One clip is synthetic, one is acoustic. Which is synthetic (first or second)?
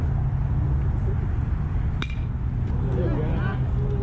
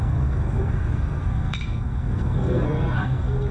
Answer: second